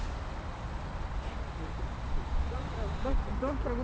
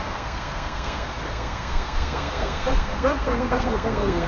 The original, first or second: first